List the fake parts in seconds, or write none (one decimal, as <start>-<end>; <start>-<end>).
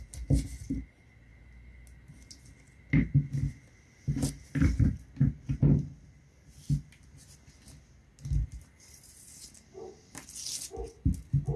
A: none